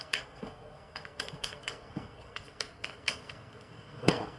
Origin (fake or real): fake